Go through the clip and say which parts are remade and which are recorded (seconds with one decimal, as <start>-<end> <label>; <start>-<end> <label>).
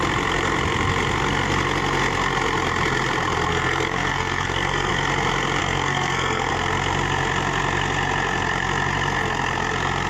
0.0-3.5 recorded; 3.5-4.9 remade; 4.9-5.6 recorded; 5.6-6.5 remade; 6.5-10.1 recorded